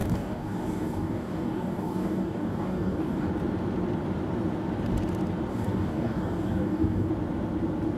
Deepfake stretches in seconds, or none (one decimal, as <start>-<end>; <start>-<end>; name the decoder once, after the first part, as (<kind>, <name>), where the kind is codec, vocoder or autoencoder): 0.0-3.3 (codec, DAC); 5.5-7.1